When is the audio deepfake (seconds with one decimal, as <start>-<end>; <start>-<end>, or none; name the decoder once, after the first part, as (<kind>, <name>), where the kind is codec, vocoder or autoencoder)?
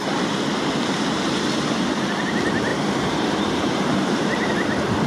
2.7-4.5 (vocoder, BigVGAN v2)